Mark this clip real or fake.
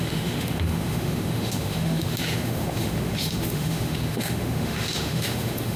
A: fake